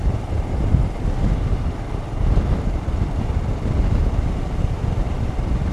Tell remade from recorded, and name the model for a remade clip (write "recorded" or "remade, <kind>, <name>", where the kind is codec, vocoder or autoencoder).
recorded